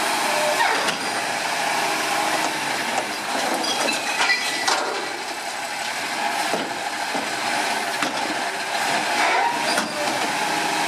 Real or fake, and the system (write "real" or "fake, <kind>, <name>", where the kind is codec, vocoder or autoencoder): fake, vocoder, BigVGAN v2